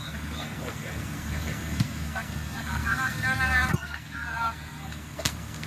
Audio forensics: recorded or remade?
remade